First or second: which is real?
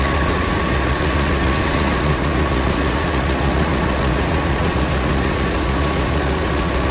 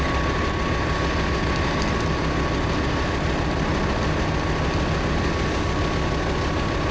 second